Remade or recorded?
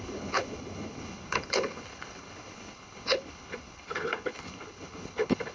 remade